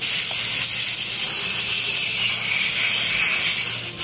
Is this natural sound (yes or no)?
yes